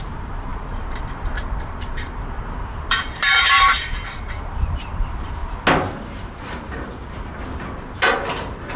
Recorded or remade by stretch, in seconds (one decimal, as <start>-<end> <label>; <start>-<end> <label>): 0.0-5.4 remade; 5.4-8.3 recorded; 8.3-8.8 remade